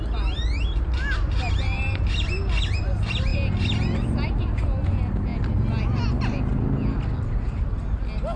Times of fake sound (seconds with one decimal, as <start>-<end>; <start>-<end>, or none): none

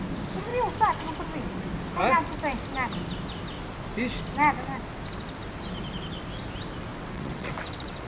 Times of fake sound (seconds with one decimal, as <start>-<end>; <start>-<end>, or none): 6.9-8.1

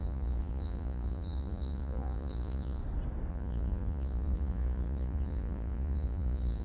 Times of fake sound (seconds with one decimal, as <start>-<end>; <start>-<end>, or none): 0.0-2.8; 3.3-6.6

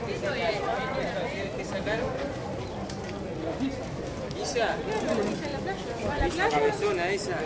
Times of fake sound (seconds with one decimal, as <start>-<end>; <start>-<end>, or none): 0.7-2.6

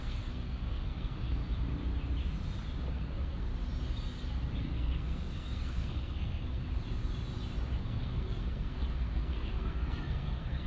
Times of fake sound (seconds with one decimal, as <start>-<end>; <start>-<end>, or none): 0.0-1.4; 2.9-3.5; 4.6-6.6; 7.8-10.7

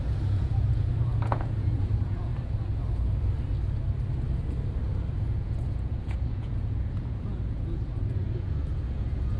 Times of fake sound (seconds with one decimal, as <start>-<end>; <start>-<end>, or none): 0.0-2.3; 5.2-9.4